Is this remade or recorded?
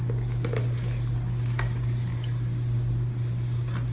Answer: recorded